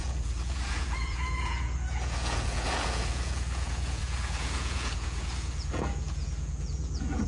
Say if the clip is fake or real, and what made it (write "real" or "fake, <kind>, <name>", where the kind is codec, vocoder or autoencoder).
fake, vocoder, Vocos